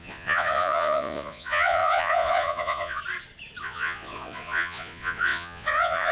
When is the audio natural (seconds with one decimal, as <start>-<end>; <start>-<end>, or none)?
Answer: 3.0-3.6